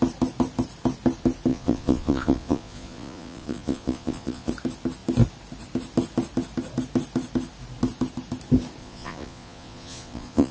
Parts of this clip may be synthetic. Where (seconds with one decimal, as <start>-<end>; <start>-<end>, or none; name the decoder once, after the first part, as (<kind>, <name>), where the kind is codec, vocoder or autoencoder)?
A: 1.5-4.5 (vocoder, Vocos); 8.8-10.5